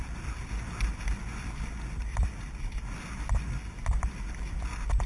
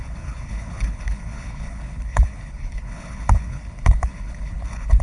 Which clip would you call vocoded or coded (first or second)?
second